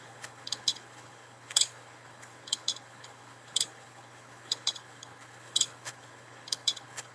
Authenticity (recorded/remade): remade